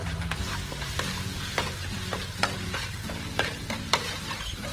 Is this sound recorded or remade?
remade